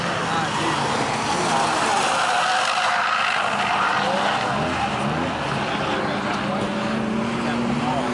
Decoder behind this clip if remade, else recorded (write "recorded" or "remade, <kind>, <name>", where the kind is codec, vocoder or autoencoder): recorded